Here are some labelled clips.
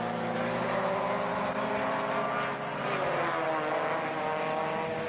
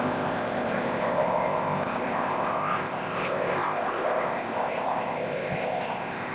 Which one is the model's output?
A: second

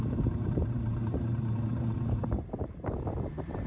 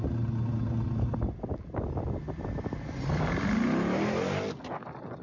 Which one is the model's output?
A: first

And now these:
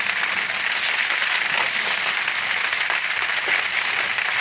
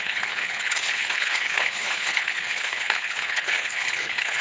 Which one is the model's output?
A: second